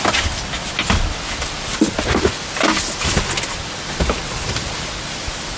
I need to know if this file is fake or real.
real